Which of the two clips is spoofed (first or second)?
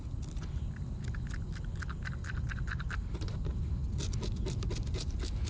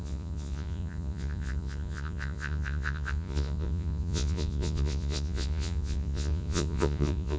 second